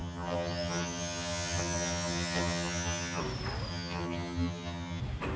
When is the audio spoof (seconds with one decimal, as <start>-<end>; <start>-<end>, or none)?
0.0-3.2; 3.7-5.0